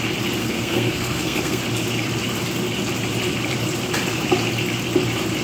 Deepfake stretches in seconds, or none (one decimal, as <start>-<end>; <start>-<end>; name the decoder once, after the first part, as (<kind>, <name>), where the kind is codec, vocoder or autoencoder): 0.4-1.6 (codec, SNAC)